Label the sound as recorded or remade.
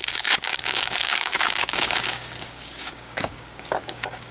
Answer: remade